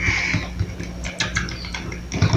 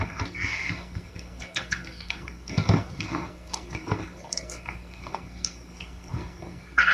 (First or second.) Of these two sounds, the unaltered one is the first